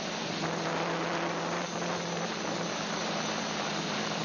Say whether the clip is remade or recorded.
remade